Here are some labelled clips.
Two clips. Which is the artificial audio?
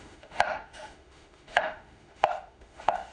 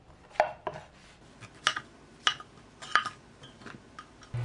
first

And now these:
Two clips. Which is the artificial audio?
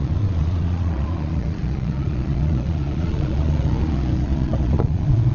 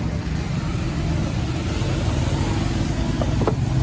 first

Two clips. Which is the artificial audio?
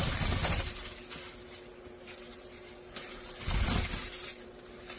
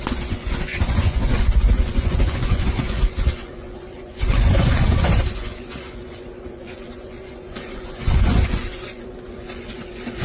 second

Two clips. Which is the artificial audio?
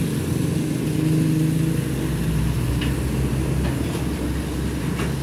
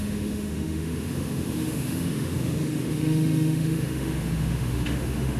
second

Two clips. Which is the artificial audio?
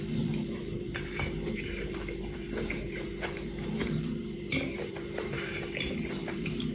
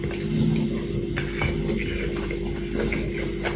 first